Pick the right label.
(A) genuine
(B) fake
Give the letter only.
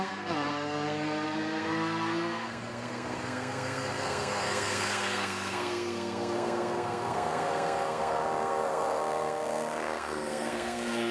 B